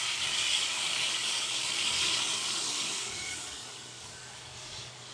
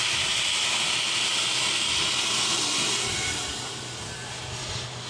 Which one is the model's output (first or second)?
first